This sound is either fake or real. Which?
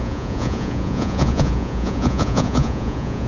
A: fake